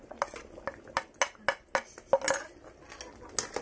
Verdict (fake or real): real